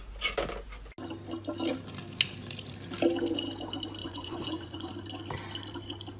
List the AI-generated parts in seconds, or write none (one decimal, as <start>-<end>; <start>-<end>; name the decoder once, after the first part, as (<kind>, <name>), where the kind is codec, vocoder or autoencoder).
4.0-4.9 (vocoder, Vocos)